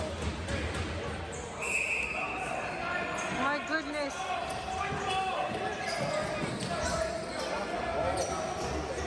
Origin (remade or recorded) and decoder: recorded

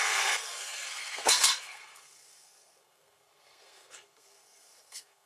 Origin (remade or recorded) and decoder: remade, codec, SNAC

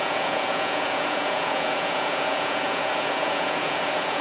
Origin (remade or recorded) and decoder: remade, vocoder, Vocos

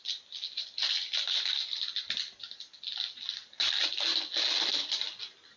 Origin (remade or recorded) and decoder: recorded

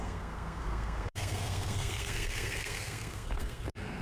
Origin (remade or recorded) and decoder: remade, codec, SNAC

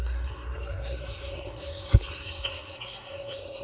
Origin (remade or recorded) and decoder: remade, codec, SNAC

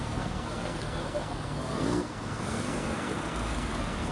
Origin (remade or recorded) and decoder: remade, codec, SNAC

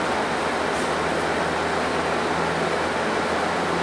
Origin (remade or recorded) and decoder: recorded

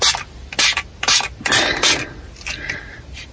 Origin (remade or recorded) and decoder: recorded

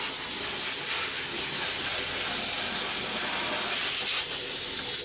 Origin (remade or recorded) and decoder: recorded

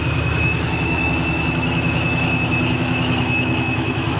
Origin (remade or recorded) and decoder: remade, autoencoder, DAC-VAE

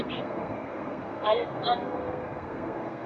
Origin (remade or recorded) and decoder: remade, codec, SNAC